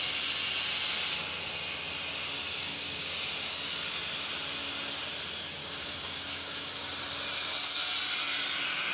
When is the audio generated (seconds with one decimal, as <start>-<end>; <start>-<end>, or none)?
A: 2.6-3.3; 5.6-6.7